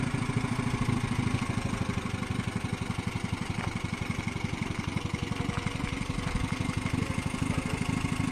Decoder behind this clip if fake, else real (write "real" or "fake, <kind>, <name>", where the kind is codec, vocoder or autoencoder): real